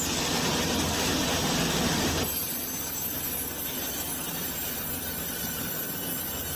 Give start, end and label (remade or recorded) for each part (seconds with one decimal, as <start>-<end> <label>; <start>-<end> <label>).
0.0-6.6 recorded